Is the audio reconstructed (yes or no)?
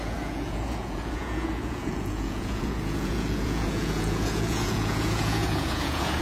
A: yes